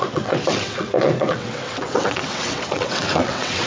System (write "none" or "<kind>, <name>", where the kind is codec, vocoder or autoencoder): vocoder, WaveNeXt